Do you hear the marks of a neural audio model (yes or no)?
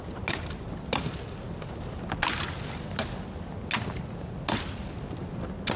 no